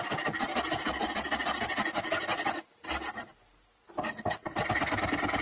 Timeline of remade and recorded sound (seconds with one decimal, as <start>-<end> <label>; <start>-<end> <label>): 0.0-5.4 recorded